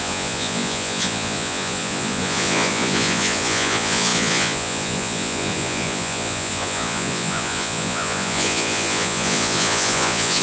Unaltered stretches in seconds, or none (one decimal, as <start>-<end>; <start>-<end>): none